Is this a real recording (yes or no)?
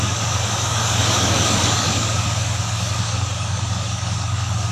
no